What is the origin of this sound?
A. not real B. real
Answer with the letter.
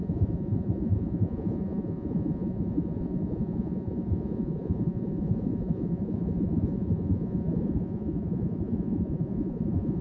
A